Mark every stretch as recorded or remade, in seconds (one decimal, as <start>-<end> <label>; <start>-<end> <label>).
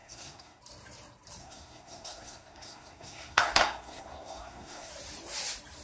0.0-0.6 remade; 0.6-1.4 recorded; 1.4-4.9 remade; 4.9-5.8 recorded